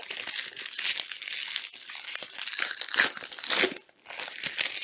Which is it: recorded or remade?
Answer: recorded